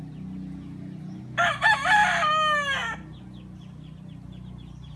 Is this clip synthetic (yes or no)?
no